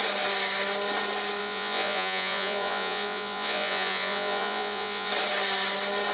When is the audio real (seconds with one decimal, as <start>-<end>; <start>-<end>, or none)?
0.0-1.4; 5.1-6.1